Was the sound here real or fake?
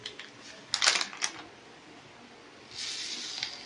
real